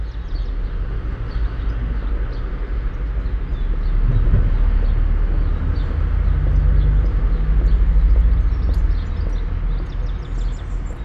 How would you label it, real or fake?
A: real